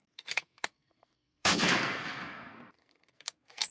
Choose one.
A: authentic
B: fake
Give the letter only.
B